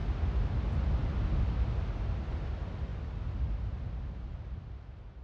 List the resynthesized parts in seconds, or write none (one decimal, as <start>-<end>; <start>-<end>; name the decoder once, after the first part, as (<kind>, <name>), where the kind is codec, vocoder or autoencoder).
none